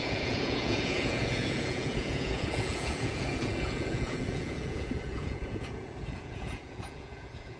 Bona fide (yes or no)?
no